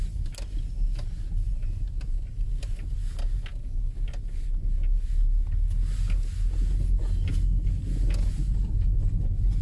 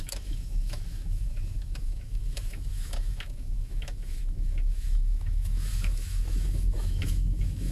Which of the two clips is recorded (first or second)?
first